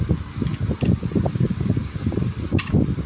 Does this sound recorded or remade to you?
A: recorded